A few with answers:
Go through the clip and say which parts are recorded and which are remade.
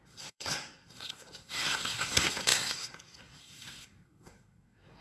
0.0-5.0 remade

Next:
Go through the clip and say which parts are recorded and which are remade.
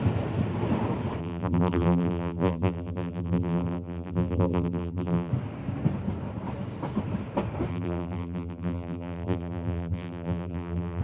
0.0-1.2 recorded; 1.2-5.3 remade; 5.3-7.7 recorded; 7.7-11.0 remade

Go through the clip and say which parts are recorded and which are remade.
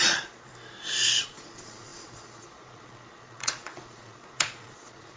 0.0-0.5 remade; 0.5-1.2 recorded; 1.2-5.2 remade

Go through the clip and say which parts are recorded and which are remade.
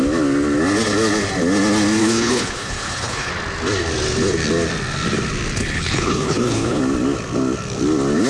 0.0-2.0 recorded; 2.0-3.3 remade; 3.3-5.6 recorded; 5.6-6.8 remade; 6.8-8.3 recorded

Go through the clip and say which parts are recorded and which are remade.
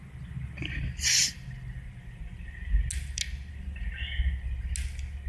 0.0-5.3 recorded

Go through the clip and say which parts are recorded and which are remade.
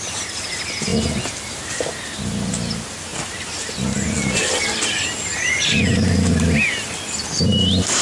0.0-8.0 recorded